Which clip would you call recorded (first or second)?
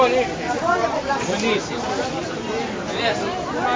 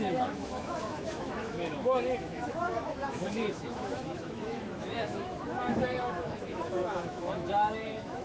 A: first